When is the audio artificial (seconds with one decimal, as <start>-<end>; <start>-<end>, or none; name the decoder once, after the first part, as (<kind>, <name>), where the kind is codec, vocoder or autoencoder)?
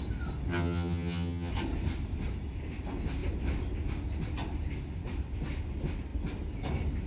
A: 0.5-1.5 (vocoder, HiFi-GAN)